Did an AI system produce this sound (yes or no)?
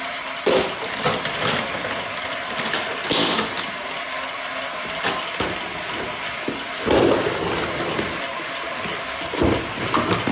no